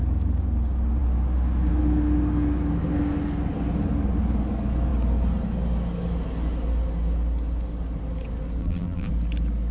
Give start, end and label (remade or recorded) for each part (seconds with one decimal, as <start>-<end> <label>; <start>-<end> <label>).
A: 0.0-8.6 recorded; 8.6-9.1 remade; 9.1-9.7 recorded